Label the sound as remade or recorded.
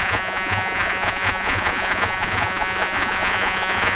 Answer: remade